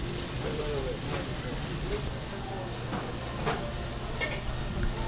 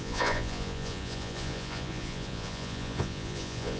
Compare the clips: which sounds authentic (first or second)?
first